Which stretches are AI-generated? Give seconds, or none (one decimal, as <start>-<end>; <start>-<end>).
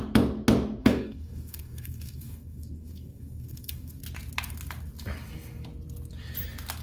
0.8-4.0